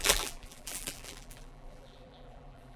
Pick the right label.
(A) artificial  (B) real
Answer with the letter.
A